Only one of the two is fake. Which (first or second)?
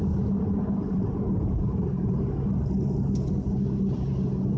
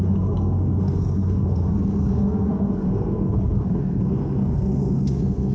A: second